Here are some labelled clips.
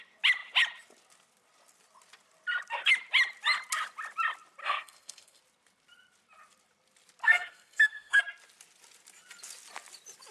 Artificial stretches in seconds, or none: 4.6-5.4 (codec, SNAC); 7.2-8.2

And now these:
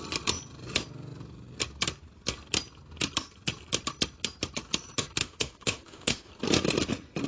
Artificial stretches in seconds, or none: 5.2-6.3 (autoencoder, DAC-VAE)

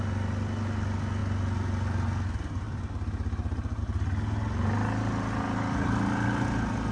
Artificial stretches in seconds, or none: none